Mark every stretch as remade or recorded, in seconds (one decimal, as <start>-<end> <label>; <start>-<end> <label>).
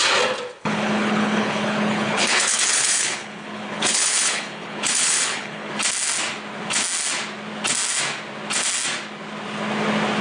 0.0-0.6 recorded; 0.6-5.7 remade; 5.7-10.2 recorded